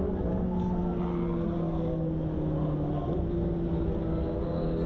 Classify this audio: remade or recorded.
recorded